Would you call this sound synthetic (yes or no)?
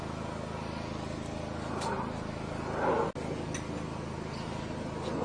no